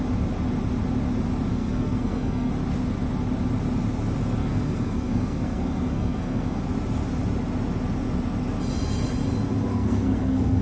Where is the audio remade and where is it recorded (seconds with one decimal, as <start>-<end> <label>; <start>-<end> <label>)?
0.0-1.5 recorded; 1.5-2.5 remade; 2.5-4.4 recorded; 4.4-6.6 remade; 6.6-9.7 recorded; 9.7-10.6 remade

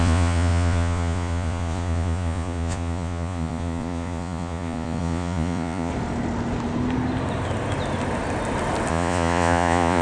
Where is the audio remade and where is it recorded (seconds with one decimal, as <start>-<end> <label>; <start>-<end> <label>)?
0.0-5.9 remade; 5.9-8.9 recorded; 8.9-10.0 remade

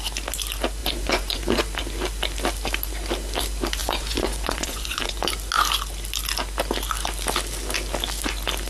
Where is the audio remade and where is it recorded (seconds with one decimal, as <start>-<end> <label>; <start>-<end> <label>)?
0.0-0.8 recorded; 0.8-1.6 remade; 1.6-3.8 recorded; 3.8-5.3 remade; 5.3-8.7 recorded

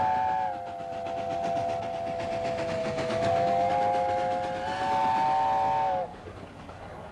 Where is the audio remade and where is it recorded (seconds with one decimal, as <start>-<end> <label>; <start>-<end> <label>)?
0.0-2.8 recorded; 2.8-3.7 remade; 3.7-6.1 recorded; 6.1-7.1 remade

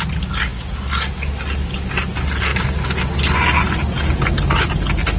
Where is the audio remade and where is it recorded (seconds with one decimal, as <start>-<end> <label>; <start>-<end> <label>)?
0.0-5.2 recorded

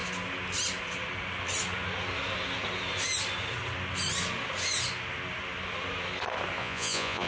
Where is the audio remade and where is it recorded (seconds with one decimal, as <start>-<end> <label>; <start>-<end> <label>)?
0.0-6.6 recorded; 6.6-7.3 remade

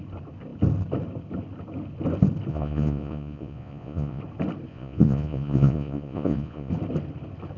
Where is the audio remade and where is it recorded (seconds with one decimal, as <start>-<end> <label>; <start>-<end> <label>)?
0.0-2.5 recorded; 2.5-4.2 remade; 4.2-4.7 recorded; 4.7-6.7 remade; 6.7-7.6 recorded

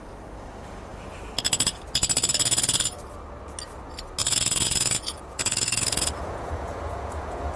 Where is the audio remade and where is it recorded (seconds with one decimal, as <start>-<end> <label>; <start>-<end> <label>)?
0.0-4.2 recorded; 4.2-7.6 remade